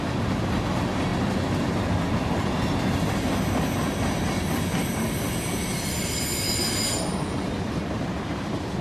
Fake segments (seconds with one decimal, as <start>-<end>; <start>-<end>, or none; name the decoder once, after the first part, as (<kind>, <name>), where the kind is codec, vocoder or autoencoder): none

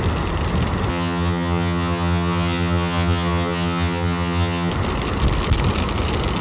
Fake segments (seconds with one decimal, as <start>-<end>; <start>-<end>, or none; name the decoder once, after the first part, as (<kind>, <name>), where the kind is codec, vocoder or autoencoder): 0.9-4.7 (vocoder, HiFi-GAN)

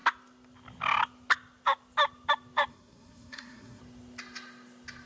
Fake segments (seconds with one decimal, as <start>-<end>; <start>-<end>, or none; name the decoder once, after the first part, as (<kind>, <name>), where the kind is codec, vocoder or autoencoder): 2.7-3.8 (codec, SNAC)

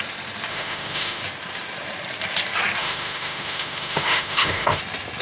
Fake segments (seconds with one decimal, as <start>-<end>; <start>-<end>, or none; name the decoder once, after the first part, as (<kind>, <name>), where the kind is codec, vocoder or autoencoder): 0.5-1.2 (autoencoder, DAC-VAE); 2.8-4.8